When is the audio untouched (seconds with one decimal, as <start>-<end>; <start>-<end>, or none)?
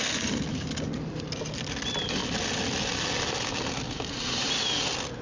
0.0-5.2